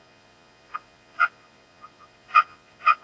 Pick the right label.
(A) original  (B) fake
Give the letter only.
B